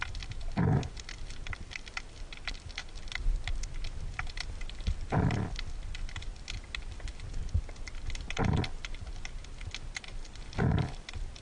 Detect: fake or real real